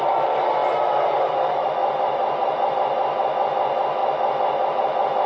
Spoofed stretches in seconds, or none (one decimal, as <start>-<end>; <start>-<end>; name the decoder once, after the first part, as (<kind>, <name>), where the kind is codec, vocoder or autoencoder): 1.8-2.7 (vocoder, BigVGAN v2)